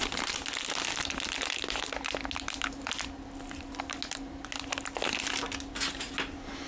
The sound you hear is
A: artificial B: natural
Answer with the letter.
B